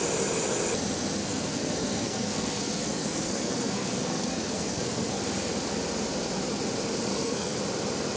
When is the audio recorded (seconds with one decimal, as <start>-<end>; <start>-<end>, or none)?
0.0-1.2; 5.2-7.1; 7.6-8.2